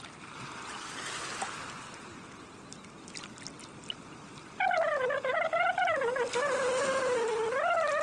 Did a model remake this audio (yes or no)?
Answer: no